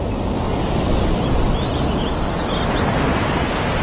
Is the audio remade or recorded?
recorded